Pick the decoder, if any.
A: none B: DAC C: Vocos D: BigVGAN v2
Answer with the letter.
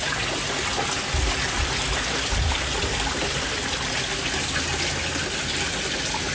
A